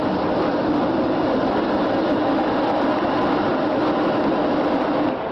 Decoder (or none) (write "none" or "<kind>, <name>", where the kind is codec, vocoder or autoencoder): none